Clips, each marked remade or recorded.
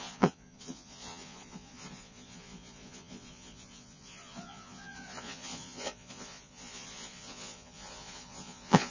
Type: remade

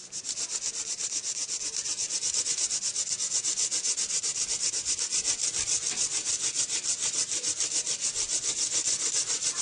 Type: recorded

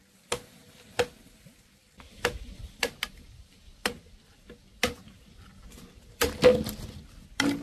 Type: recorded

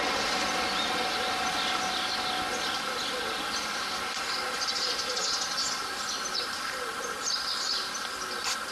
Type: recorded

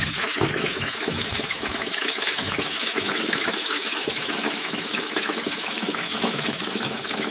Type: remade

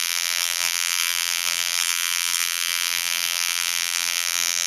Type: remade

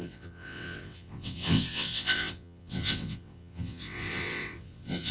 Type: remade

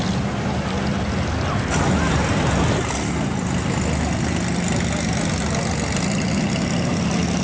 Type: recorded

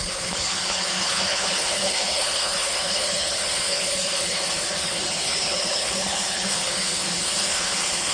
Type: remade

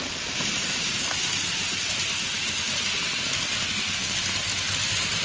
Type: recorded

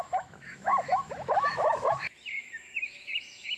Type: remade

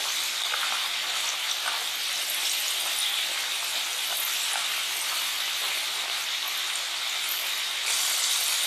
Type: recorded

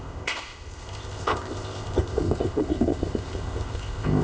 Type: remade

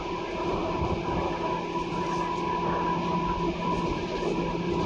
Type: recorded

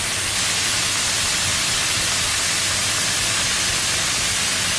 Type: recorded